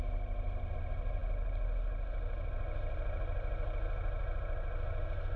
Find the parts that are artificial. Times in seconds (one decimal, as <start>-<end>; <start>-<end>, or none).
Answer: none